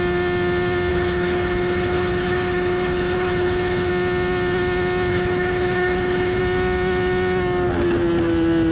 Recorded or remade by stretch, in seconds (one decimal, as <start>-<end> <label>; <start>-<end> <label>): 0.0-0.9 recorded; 0.9-3.9 remade; 3.9-5.1 recorded; 5.1-6.4 remade; 6.4-8.7 recorded